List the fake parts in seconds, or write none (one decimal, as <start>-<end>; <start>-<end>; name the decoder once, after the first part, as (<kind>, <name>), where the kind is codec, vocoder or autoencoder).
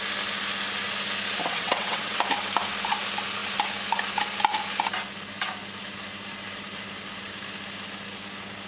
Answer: 1.4-2.2 (vocoder, WaveNeXt)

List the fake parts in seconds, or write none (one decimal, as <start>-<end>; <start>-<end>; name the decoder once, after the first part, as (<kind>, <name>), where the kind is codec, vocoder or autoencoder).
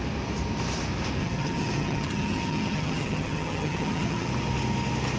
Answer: 1.2-4.3 (vocoder, HiFi-GAN)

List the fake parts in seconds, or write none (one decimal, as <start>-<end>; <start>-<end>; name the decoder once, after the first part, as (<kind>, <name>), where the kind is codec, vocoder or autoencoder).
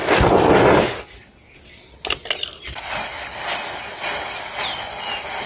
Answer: none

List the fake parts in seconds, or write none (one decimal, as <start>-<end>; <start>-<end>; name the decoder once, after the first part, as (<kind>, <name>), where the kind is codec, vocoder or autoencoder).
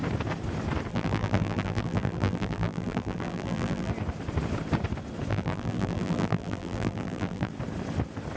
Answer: 0.9-3.9 (vocoder, BigVGAN v2); 5.3-7.5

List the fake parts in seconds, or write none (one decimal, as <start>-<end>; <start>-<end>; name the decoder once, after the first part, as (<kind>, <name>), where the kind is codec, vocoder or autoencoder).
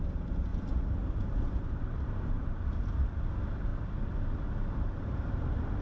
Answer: 0.0-0.5 (vocoder, BigVGAN v2); 1.2-3.7; 4.7-5.8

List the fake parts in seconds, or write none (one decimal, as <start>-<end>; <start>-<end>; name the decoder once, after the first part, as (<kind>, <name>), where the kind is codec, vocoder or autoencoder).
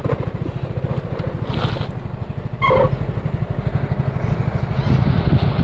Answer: none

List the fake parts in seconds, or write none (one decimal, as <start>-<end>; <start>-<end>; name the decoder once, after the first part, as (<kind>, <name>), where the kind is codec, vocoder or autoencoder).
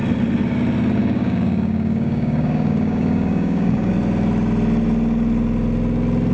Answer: 1.0-3.9 (codec, DAC)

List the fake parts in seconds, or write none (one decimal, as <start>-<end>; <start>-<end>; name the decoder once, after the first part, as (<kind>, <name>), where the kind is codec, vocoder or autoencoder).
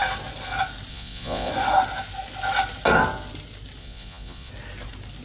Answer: 0.9-1.5 (vocoder, Vocos); 3.8-4.5